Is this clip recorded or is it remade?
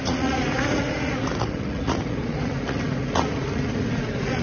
remade